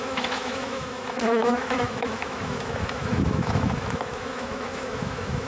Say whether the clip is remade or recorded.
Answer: remade